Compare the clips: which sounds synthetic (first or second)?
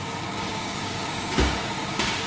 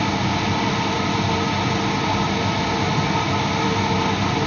first